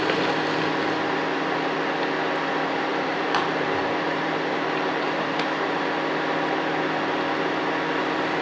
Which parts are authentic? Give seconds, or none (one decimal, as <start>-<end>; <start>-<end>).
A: 0.0-2.9; 5.8-8.4